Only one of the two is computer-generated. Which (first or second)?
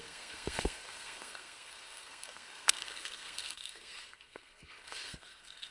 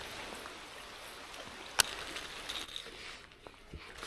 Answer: first